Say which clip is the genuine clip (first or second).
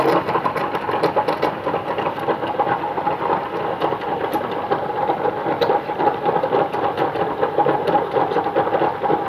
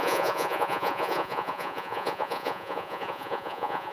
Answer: first